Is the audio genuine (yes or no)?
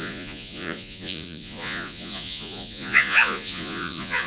no